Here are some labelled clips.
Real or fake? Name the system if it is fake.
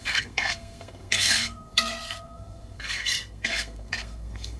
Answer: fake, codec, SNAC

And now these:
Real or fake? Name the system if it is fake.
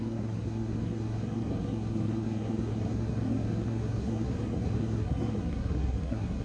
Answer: fake, codec, SNAC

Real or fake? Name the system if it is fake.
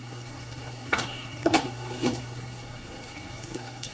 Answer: fake, codec, SNAC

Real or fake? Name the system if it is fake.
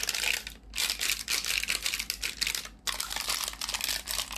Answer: real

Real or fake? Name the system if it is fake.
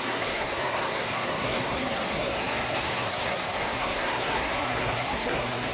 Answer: fake, codec, SNAC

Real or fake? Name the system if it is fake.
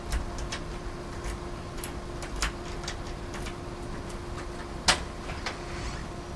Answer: real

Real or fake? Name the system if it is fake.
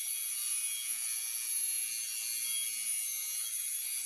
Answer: real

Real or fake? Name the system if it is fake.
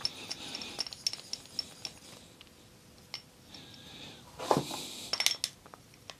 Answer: real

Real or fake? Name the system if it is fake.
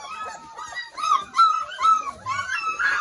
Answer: real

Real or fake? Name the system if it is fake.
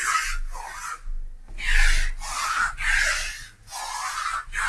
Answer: real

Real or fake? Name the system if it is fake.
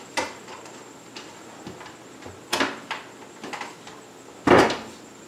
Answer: real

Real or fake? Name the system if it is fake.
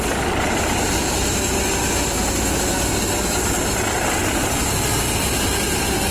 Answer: real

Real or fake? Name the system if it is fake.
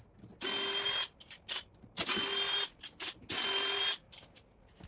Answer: real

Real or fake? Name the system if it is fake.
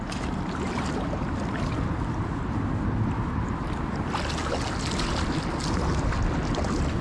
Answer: real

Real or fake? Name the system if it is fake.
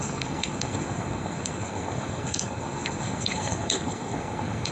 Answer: fake, codec, SNAC